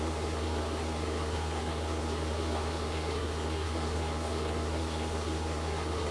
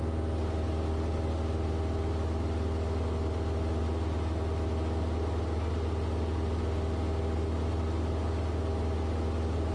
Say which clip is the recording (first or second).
second